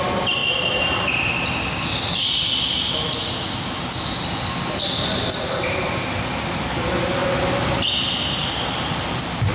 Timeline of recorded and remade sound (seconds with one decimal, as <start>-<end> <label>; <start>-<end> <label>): 0.0-9.5 recorded